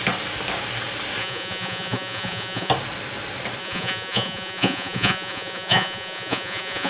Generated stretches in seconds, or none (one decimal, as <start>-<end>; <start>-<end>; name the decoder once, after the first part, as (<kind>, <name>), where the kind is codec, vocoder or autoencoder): 1.2-2.7 (vocoder, Vocos); 3.6-6.9